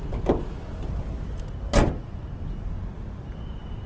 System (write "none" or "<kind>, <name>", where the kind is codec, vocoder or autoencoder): none